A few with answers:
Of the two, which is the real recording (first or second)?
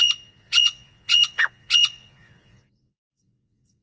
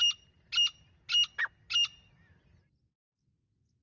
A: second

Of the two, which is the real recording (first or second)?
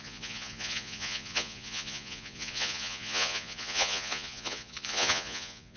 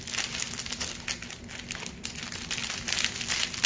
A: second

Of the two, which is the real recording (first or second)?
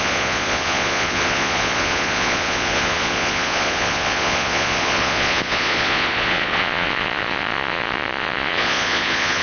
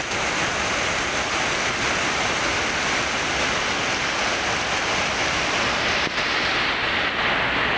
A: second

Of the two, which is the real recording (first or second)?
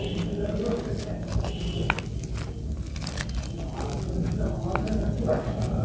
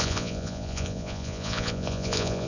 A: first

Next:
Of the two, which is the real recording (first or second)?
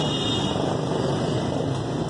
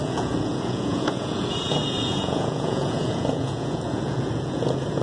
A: first